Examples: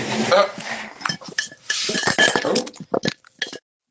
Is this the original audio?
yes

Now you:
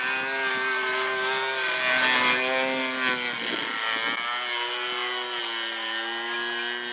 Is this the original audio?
yes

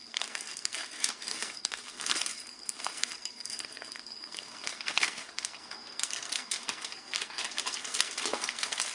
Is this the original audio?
no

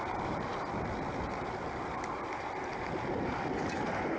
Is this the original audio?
no